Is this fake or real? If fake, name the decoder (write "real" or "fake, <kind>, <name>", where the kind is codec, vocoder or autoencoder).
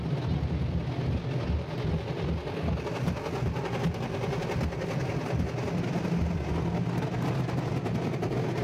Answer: real